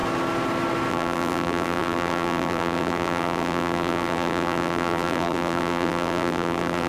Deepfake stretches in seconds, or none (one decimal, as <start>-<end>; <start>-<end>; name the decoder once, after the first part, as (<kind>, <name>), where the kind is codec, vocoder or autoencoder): 0.9-6.9 (vocoder, BigVGAN v2)